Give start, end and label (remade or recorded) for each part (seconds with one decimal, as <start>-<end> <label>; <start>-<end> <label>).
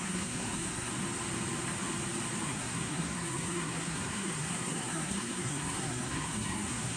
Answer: 0.0-0.9 remade; 0.9-2.4 recorded; 2.4-7.0 remade